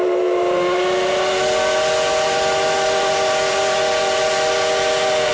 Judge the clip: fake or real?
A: real